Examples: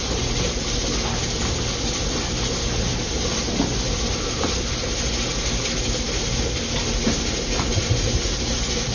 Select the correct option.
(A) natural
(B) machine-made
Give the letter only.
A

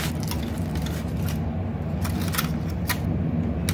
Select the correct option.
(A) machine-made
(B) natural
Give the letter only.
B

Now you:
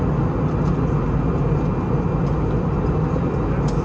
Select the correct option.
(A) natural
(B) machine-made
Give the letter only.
A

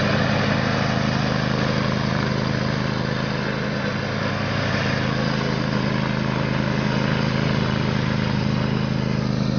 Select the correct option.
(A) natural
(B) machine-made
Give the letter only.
A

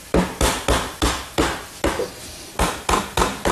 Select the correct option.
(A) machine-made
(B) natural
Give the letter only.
B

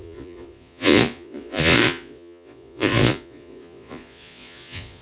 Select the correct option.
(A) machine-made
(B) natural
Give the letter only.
A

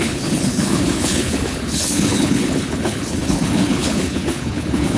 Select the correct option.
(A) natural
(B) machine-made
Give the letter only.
B